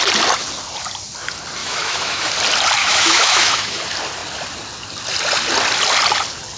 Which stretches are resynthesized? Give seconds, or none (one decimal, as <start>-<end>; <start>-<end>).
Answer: 1.6-2.3; 2.8-3.8